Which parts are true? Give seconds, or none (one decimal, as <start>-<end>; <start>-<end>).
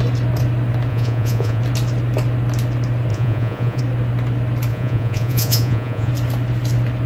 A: 0.0-0.9; 1.6-3.1; 3.8-4.7; 6.1-7.1